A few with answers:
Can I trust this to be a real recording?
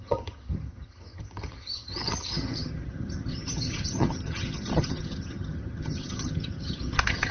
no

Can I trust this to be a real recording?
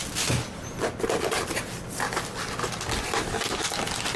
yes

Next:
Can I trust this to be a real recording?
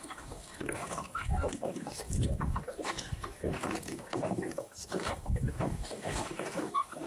no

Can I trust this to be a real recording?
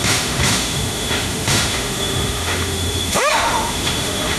no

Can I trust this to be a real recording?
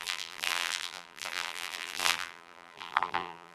no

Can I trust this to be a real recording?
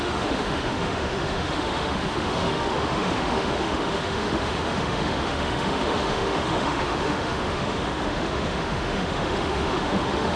no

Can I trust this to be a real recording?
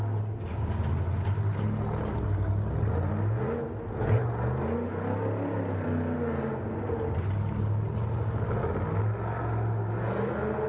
yes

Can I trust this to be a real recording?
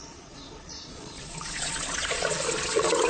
no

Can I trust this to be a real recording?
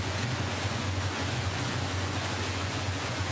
no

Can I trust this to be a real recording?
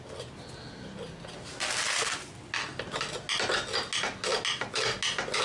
yes